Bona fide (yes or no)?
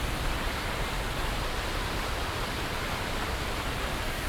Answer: yes